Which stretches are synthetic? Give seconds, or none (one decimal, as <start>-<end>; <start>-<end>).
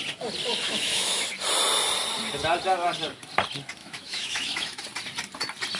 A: 0.5-1.2; 3.8-4.8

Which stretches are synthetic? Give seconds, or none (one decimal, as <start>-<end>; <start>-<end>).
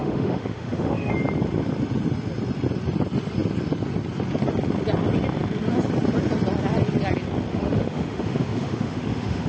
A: 0.0-1.1; 7.5-9.5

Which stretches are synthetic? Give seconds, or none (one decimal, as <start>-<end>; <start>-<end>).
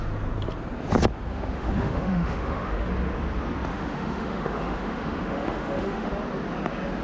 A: 1.3-2.9; 3.7-6.1